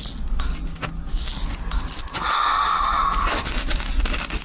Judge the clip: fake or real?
real